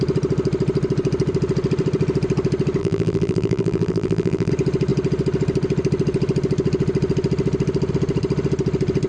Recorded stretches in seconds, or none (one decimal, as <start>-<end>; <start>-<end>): 0.0-2.8; 4.5-9.1